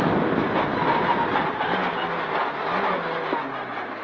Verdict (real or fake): real